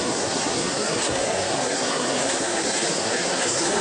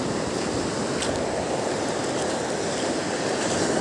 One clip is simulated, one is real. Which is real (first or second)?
second